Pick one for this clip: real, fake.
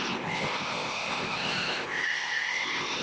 fake